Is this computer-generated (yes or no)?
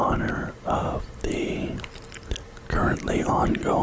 no